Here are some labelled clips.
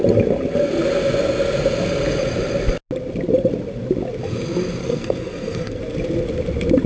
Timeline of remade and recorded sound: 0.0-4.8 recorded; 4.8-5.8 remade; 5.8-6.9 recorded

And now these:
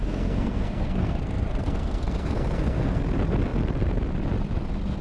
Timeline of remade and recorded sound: 0.0-3.0 remade; 3.0-5.0 recorded

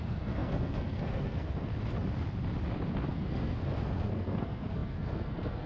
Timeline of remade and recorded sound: 0.0-1.7 remade; 1.7-3.1 recorded; 3.1-5.7 remade